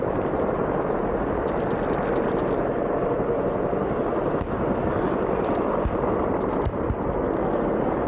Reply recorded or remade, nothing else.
recorded